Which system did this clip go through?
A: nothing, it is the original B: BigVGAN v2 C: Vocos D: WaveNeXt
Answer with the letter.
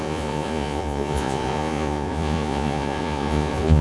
C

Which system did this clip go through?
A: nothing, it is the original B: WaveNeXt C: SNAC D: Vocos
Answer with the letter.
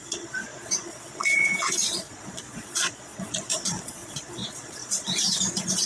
D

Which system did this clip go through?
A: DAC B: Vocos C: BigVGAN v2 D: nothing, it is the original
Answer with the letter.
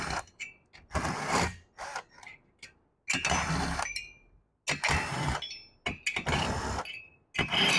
D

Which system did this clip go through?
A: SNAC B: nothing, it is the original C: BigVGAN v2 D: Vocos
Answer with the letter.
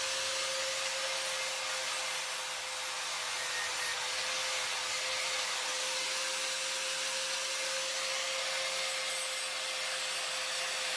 B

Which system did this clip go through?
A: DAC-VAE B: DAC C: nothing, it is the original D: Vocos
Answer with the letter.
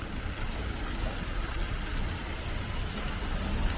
C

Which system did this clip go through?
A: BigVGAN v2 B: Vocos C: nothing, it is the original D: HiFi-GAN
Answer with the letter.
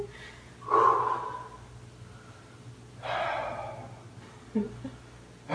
C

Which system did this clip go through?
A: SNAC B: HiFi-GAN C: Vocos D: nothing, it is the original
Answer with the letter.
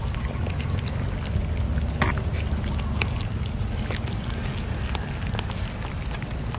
D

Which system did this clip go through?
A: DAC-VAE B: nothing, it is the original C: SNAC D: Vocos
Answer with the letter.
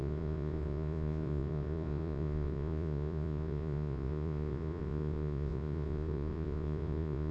D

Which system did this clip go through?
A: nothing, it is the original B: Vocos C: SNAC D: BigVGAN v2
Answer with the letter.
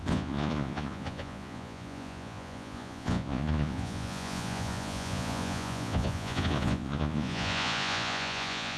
B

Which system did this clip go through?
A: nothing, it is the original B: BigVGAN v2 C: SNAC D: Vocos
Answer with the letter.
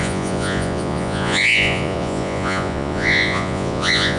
D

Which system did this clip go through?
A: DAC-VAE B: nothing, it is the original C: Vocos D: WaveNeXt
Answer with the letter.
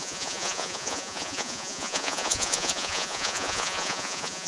C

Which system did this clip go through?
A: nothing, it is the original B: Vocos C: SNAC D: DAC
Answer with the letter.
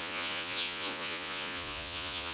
B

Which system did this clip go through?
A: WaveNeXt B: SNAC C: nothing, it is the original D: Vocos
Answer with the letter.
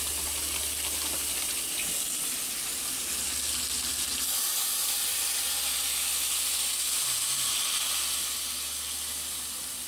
C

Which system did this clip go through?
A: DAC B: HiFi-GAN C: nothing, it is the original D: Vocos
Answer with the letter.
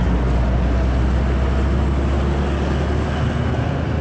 C